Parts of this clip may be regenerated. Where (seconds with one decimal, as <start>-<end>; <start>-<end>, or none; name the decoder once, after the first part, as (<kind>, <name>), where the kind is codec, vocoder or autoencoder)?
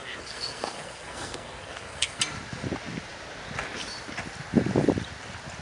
0.0-2.2 (codec, SNAC)